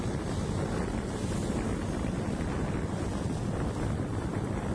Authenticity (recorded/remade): recorded